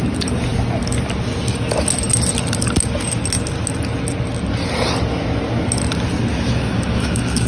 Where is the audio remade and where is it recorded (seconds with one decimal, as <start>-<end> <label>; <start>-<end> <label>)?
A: 0.0-6.3 recorded; 6.3-7.5 remade